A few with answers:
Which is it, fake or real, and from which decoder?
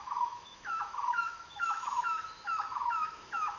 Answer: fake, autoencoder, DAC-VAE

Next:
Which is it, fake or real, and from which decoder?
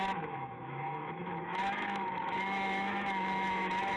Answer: fake, autoencoder, DAC-VAE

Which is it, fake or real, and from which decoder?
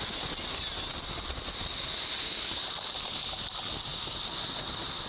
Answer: real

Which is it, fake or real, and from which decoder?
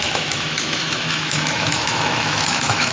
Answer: fake, autoencoder, DAC-VAE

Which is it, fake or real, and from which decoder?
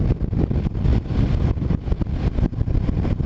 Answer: real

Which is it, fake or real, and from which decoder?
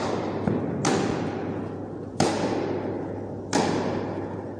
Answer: real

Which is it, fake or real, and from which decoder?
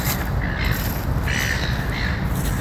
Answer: real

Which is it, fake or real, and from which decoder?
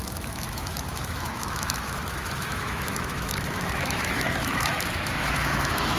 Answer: fake, autoencoder, DAC-VAE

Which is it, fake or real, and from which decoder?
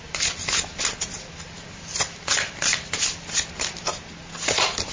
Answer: real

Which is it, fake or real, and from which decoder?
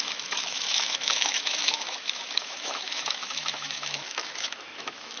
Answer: fake, autoencoder, DAC-VAE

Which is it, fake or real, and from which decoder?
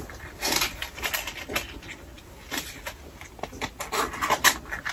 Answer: real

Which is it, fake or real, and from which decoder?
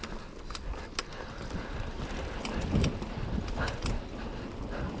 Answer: real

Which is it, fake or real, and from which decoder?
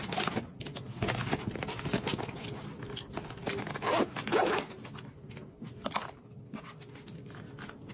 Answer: real